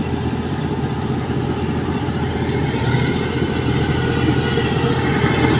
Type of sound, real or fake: real